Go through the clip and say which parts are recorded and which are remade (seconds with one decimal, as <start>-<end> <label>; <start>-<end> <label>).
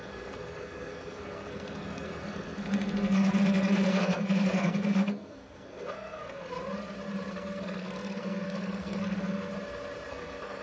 0.0-6.5 remade; 6.5-7.3 recorded; 7.3-9.5 remade; 9.5-10.1 recorded; 10.1-10.6 remade